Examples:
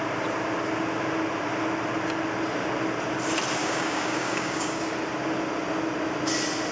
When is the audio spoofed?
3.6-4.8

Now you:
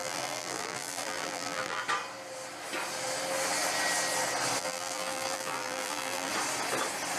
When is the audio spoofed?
0.0-1.8; 4.6-6.3

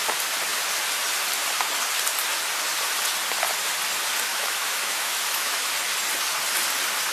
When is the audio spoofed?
4.3-5.7

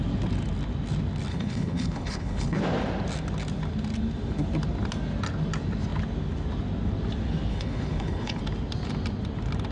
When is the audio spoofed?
1.3-2.6; 7.5-8.4

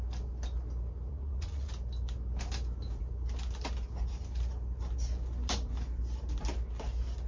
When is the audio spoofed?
1.1-1.7

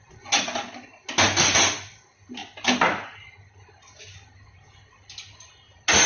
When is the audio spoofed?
none

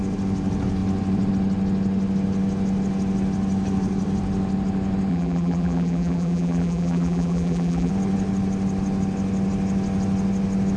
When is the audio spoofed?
5.1-7.9